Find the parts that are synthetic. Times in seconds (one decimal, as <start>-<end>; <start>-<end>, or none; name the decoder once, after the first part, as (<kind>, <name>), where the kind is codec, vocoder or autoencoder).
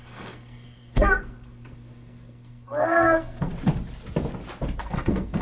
0.0-3.5 (codec, SNAC); 4.8-5.4